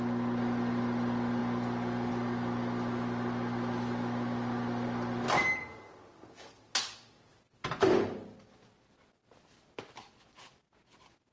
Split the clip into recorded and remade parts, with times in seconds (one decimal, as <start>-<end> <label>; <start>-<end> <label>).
0.0-11.3 recorded